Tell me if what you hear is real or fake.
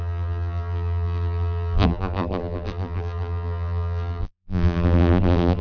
fake